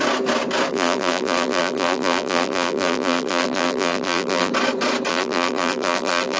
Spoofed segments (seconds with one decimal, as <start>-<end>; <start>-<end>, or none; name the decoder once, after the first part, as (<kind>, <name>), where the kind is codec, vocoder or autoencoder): 0.7-4.5 (vocoder, BigVGAN v2); 5.1-6.4